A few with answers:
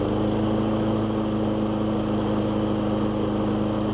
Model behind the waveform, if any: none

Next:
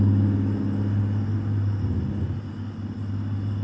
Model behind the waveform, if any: none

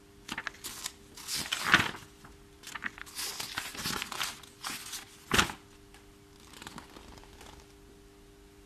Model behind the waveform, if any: none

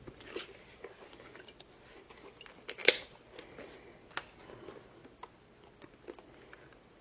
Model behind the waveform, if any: none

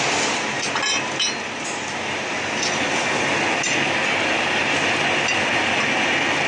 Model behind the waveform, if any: none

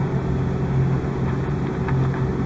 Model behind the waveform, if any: none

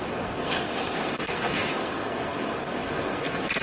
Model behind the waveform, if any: codec, SNAC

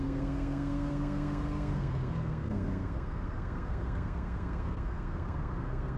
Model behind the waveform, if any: codec, SNAC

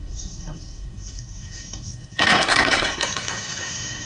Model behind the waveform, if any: codec, SNAC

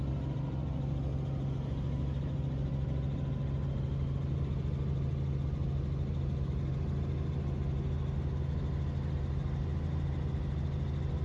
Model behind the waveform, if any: none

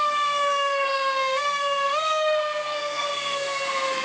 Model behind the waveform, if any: codec, SNAC